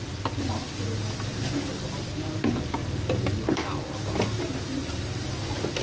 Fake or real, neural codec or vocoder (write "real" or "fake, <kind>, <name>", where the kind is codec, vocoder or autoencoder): real